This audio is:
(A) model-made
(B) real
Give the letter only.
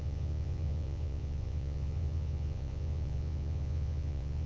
A